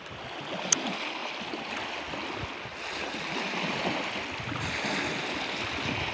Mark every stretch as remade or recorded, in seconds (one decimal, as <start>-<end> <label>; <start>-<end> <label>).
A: 0.0-6.1 recorded